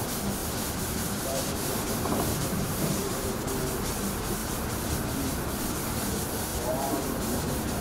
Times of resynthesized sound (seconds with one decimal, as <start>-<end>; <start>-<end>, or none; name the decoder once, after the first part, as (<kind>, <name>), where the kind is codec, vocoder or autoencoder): 0.4-3.3 (vocoder, BigVGAN v2); 4.4-5.0; 6.5-7.8